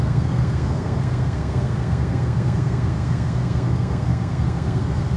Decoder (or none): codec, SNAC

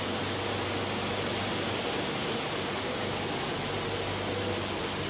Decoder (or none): none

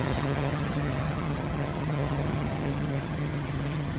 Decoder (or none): vocoder, HiFi-GAN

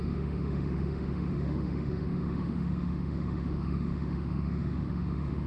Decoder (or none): autoencoder, DAC-VAE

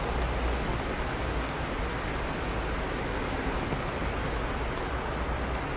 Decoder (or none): none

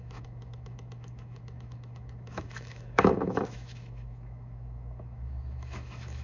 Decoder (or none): autoencoder, DAC-VAE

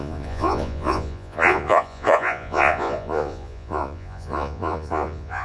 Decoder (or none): vocoder, Vocos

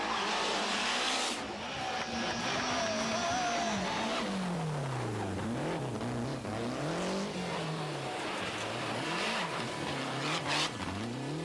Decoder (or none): none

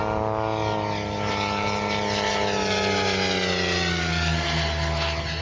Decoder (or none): none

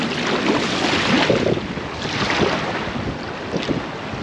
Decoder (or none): none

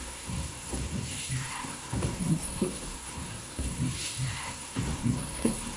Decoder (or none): codec, SNAC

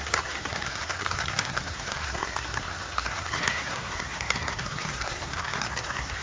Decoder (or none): codec, SNAC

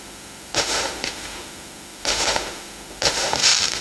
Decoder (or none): autoencoder, DAC-VAE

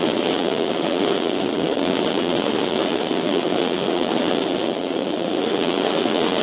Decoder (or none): vocoder, Vocos